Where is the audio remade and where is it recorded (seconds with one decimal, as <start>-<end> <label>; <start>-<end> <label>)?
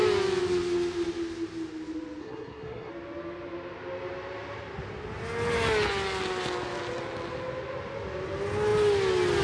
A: 0.0-2.2 recorded; 2.2-2.9 remade; 2.9-9.4 recorded